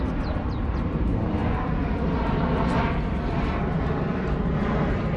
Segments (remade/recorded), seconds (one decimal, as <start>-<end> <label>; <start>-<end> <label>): 0.0-5.2 recorded